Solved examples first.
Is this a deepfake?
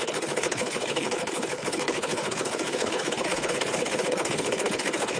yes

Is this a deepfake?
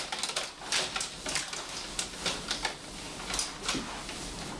no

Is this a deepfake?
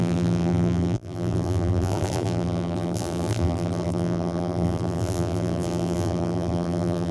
yes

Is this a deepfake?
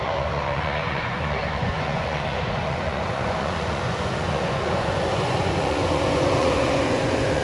yes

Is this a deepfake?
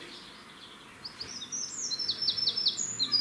no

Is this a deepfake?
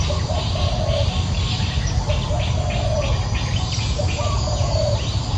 no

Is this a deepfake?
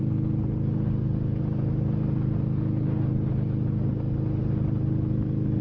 no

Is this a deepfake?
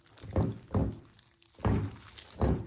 no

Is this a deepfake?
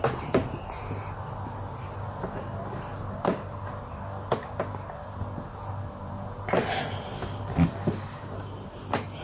no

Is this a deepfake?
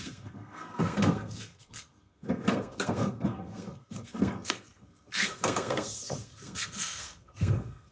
yes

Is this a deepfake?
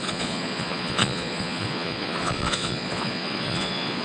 yes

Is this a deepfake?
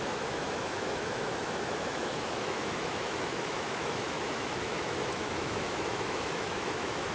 yes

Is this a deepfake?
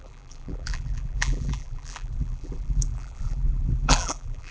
yes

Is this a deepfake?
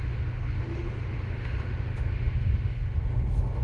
yes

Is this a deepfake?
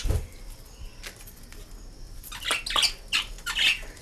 no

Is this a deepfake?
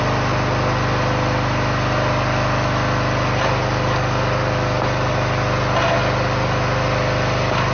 no